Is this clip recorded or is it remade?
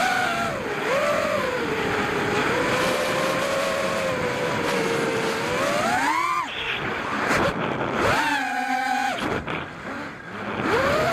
recorded